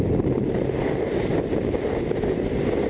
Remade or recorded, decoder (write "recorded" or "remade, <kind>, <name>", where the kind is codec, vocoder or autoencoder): recorded